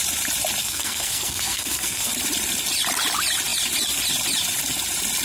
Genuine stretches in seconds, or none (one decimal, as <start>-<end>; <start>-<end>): 0.0-0.6; 2.1-5.2